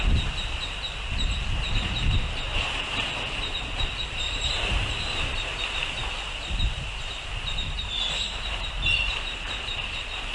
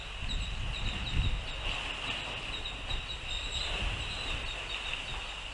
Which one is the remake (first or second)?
first